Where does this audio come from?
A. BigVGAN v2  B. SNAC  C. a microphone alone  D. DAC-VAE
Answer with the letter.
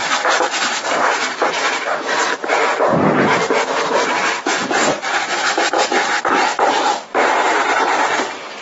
A